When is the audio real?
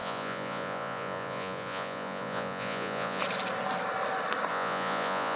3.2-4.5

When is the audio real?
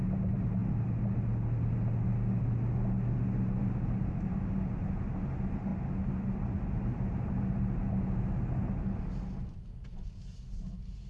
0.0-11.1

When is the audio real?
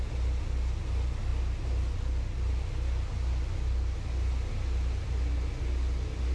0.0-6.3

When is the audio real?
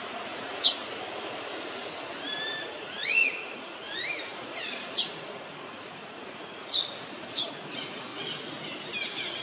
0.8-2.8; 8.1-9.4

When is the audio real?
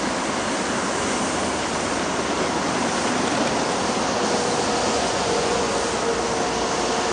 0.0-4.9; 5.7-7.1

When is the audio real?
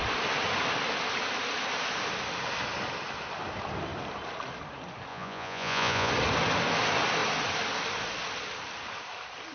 0.0-5.1; 6.1-9.5